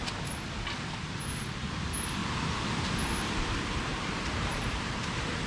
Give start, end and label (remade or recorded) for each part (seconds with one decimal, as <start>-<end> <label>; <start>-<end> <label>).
0.0-3.9 recorded; 3.9-5.5 remade